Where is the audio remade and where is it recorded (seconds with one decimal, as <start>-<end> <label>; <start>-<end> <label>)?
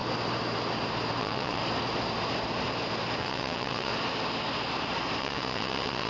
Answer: 0.0-1.2 recorded; 1.2-1.6 remade; 1.6-3.2 recorded; 3.2-3.9 remade; 3.9-5.2 recorded; 5.2-6.1 remade